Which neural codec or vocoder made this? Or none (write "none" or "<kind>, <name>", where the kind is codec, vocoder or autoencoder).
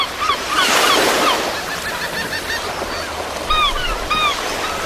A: none